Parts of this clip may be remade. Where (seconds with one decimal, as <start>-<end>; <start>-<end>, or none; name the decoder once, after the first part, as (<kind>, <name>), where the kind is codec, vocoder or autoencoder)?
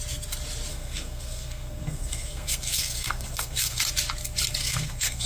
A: 0.7-3.8 (codec, SNAC); 4.6-5.3